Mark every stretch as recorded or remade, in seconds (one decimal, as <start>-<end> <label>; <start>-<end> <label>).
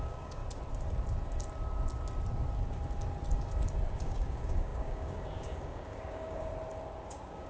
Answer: 0.0-0.4 remade; 0.4-4.0 recorded; 4.0-6.5 remade; 6.5-7.1 recorded; 7.1-7.5 remade